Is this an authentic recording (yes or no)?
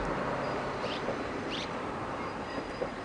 no